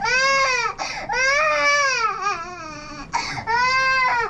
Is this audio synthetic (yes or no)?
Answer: no